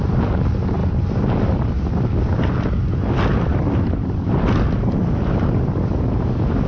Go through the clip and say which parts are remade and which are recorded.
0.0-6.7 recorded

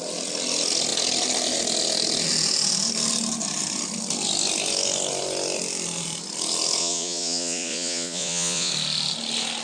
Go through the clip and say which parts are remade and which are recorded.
0.0-6.8 recorded; 6.8-8.7 remade; 8.7-9.6 recorded

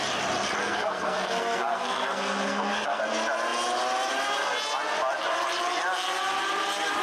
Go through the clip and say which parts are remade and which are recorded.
0.0-0.6 recorded; 0.6-3.0 remade; 3.0-7.0 recorded

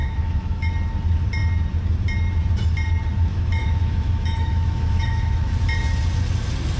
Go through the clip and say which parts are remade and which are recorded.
0.0-0.7 remade; 0.7-3.3 recorded; 3.3-5.5 remade; 5.5-6.8 recorded

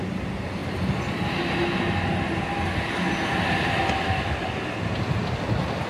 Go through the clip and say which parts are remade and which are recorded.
0.0-5.9 recorded

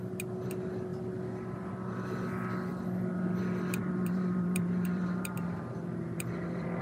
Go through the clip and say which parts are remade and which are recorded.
0.0-3.8 recorded; 3.8-6.8 remade

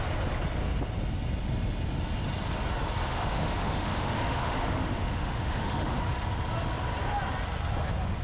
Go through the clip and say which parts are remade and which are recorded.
0.0-3.1 recorded; 3.1-6.0 remade; 6.0-8.2 recorded